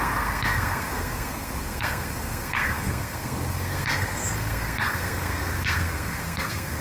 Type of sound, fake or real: fake